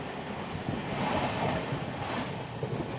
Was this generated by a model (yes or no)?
no